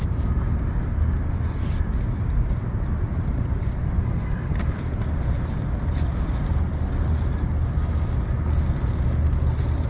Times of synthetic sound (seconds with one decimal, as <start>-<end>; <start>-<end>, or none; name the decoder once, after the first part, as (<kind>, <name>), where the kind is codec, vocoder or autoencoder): 3.1-3.8 (vocoder, BigVGAN v2)